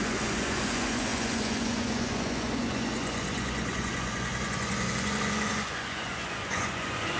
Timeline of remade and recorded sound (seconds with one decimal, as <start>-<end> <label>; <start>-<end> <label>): 0.0-7.2 remade